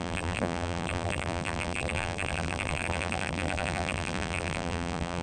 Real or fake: fake